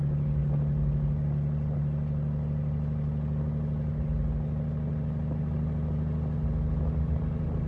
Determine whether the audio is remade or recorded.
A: recorded